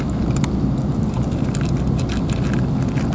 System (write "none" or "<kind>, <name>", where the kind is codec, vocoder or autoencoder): none